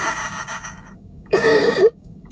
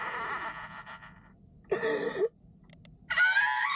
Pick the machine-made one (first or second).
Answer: first